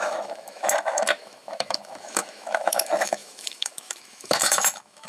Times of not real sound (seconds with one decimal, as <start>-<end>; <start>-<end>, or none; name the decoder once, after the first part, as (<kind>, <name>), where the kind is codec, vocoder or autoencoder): 0.0-5.1 (autoencoder, DAC-VAE)